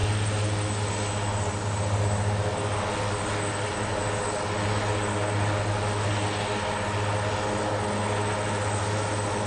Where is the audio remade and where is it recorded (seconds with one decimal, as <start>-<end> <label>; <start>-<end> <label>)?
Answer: 0.0-9.5 recorded